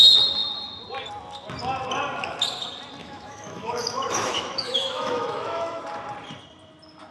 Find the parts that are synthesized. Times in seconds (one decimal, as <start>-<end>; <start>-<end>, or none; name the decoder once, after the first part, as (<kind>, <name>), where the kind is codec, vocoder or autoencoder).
3.0-5.8 (autoencoder, DAC-VAE)

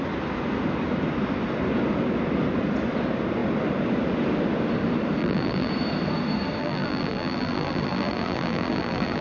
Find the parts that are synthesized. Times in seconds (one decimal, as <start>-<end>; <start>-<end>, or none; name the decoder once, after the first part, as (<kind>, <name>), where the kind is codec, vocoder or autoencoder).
5.2-5.7 (vocoder, BigVGAN v2); 6.6-9.2

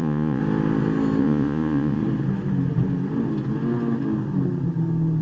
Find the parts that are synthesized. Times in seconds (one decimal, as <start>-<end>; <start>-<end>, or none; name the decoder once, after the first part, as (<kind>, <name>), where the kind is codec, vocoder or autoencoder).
0.0-0.4 (vocoder, Vocos); 1.2-2.0

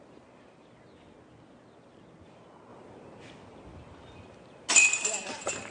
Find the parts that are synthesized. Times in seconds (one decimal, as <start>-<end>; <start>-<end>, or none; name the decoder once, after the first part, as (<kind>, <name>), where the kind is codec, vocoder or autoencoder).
none

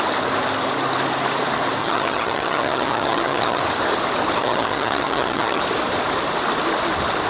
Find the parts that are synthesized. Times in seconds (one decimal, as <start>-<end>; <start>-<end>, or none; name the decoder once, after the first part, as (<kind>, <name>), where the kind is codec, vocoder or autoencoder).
1.8-3.6 (vocoder, HiFi-GAN); 4.4-5.6

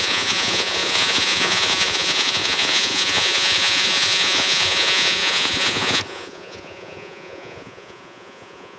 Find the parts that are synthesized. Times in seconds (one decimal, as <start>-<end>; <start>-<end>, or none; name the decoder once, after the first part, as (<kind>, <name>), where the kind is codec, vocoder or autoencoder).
0.0-8.8 (vocoder, Vocos)

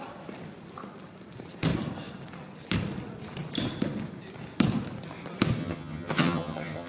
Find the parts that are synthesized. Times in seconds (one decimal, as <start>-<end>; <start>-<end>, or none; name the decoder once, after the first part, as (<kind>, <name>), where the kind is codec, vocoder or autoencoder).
5.6-6.9 (vocoder, HiFi-GAN)

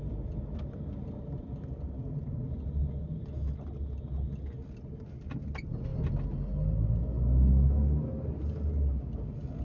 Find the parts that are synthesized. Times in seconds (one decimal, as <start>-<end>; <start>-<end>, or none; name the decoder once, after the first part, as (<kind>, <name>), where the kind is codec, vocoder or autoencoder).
none